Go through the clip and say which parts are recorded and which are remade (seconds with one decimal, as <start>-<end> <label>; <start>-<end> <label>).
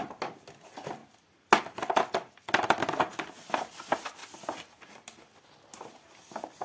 0.0-6.6 recorded